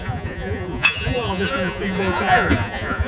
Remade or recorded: remade